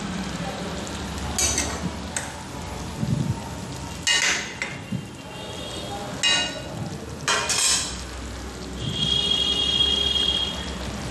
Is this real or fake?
real